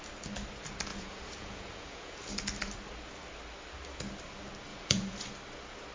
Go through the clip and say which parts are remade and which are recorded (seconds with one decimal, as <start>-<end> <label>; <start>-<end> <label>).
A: 0.0-0.9 recorded; 0.9-2.3 remade; 2.3-4.7 recorded; 4.7-5.3 remade; 5.3-5.9 recorded